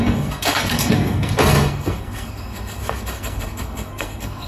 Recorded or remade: remade